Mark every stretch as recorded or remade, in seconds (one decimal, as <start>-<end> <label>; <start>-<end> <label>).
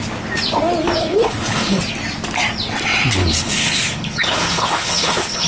0.0-1.0 recorded; 1.0-1.8 remade; 1.8-3.2 recorded; 3.2-5.5 remade